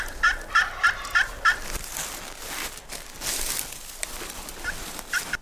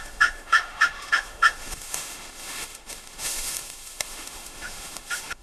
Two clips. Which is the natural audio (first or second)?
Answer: first